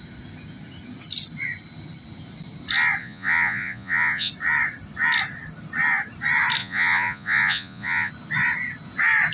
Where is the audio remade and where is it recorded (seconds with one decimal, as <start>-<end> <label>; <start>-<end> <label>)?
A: 0.0-3.0 recorded; 3.0-4.3 remade; 4.3-6.6 recorded; 6.6-8.1 remade; 8.1-9.3 recorded